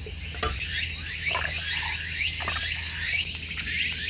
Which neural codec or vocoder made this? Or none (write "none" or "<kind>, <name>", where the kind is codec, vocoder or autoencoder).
none